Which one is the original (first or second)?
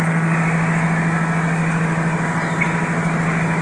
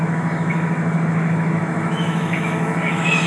first